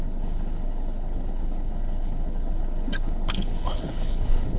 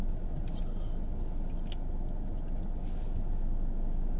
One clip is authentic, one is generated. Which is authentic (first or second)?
second